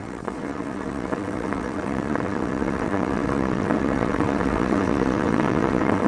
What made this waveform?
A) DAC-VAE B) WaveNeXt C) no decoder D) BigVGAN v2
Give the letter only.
B